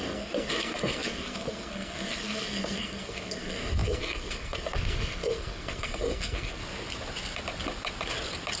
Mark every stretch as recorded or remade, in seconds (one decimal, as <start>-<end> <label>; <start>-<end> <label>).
0.0-6.6 remade; 6.6-8.6 recorded